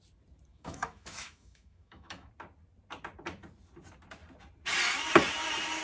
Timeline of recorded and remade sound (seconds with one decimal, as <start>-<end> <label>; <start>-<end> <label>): 0.0-0.5 recorded; 0.5-2.3 remade; 2.3-5.8 recorded